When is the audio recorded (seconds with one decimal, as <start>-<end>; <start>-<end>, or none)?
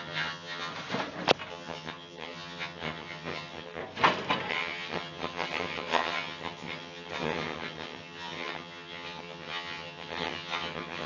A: 0.7-1.5; 3.8-4.5